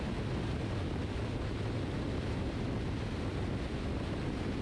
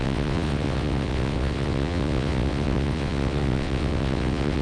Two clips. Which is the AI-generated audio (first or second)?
second